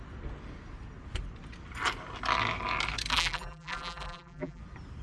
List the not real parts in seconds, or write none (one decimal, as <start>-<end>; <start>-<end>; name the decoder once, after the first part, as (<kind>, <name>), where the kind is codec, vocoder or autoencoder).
3.1-4.6 (vocoder, BigVGAN v2)